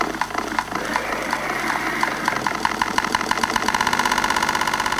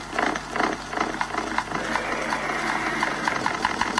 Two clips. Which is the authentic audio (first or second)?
second